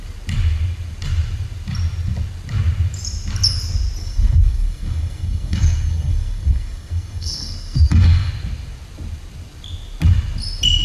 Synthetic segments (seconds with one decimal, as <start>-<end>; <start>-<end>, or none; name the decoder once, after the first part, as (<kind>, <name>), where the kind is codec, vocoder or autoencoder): 4.0-8.3 (codec, SNAC)